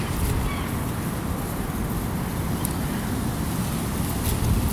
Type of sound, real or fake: real